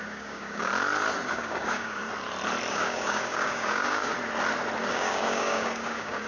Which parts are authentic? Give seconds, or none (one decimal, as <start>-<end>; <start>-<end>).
0.7-1.3; 2.0-2.7; 4.1-4.9

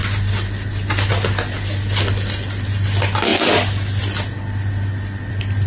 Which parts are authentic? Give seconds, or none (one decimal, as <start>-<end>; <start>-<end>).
0.0-5.7